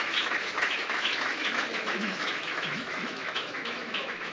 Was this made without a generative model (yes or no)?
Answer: no